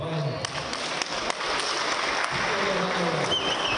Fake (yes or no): no